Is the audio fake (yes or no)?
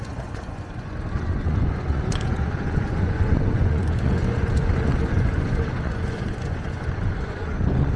yes